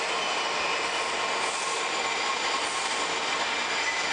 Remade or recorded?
recorded